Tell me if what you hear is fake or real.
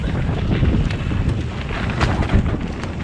real